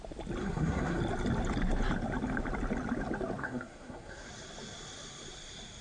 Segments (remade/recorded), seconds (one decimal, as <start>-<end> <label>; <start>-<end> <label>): 0.0-0.4 recorded; 0.4-1.0 remade; 1.0-3.4 recorded; 3.4-4.3 remade; 4.3-5.8 recorded